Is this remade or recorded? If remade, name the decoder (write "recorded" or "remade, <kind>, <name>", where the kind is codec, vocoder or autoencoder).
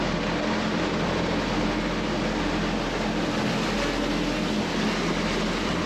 recorded